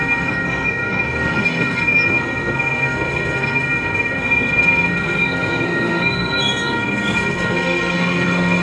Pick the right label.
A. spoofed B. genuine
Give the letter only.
A